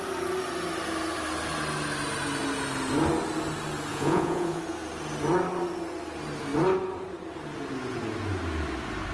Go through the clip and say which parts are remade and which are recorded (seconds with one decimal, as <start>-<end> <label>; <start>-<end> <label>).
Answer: 0.0-3.9 recorded; 3.9-4.6 remade; 4.6-9.1 recorded